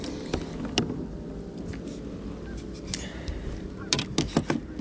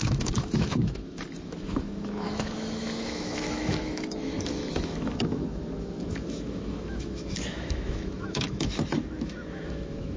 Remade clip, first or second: second